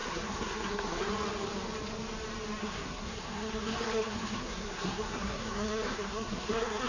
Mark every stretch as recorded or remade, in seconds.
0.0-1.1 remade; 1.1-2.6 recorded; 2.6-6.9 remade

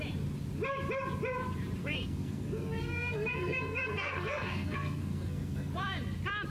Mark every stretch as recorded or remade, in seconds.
0.0-1.8 recorded; 1.8-5.7 remade; 5.7-6.5 recorded

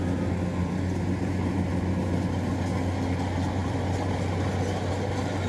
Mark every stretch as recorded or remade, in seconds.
0.0-5.5 recorded

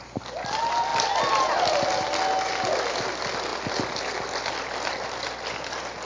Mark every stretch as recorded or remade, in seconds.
0.0-6.0 recorded

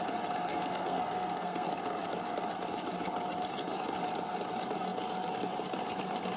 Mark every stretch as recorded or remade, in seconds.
0.0-0.5 recorded; 0.5-1.7 remade; 1.7-6.4 recorded

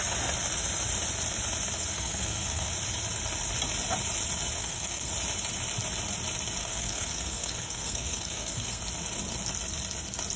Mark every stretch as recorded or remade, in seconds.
0.0-1.9 recorded; 1.9-2.7 remade; 2.7-4.6 recorded; 4.6-5.1 remade; 5.1-6.6 recorded; 6.6-8.8 remade; 8.8-10.4 recorded